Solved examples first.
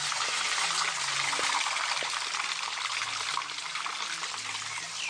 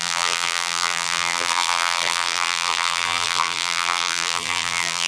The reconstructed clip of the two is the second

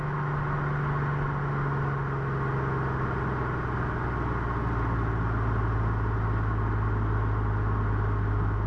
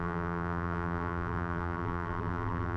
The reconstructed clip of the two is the second